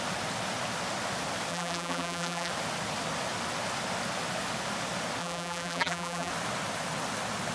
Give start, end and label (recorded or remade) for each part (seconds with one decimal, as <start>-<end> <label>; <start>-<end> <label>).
0.0-1.5 recorded; 1.5-2.5 remade; 2.5-5.2 recorded; 5.2-6.3 remade; 6.3-7.5 recorded